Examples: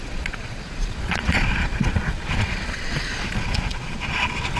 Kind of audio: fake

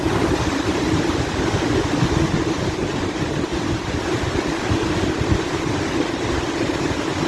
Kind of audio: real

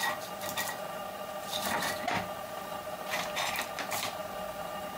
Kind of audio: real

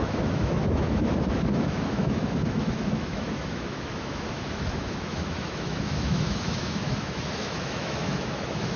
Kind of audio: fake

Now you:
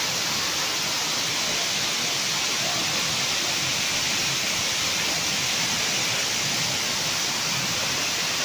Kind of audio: real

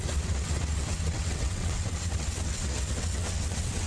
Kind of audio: fake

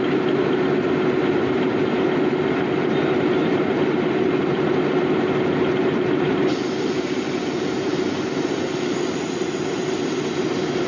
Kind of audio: real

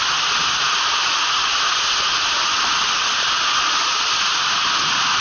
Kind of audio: real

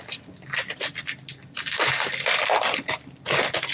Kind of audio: real